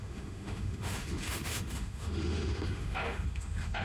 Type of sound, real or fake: fake